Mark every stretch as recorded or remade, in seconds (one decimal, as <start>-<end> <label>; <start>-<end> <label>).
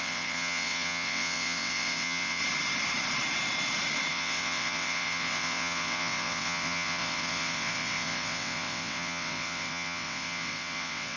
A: 0.0-2.4 remade; 2.4-4.1 recorded; 4.1-11.2 remade